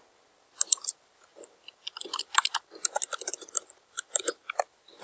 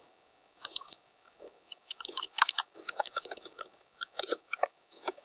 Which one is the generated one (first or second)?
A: second